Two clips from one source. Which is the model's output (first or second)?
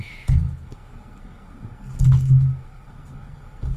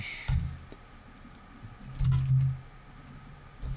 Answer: first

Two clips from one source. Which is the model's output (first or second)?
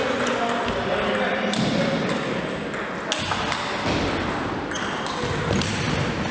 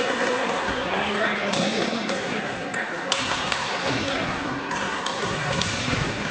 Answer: second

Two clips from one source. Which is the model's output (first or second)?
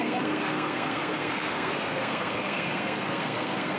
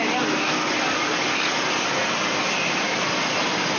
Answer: first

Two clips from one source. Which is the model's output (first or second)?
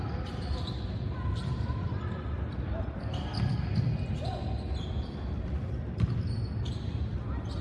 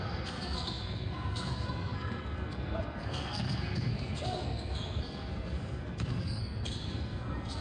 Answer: second